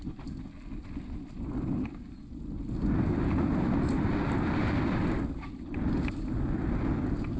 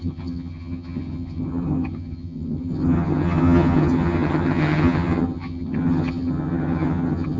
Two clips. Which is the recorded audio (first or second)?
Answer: first